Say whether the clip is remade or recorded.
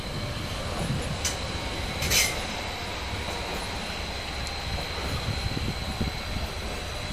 recorded